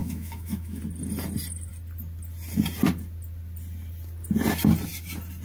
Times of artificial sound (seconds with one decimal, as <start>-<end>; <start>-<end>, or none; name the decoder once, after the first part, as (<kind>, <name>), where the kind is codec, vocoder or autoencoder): 0.0-0.8 (autoencoder, DAC-VAE)